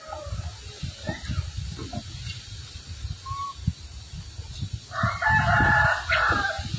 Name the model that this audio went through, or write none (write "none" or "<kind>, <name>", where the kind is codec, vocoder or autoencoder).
none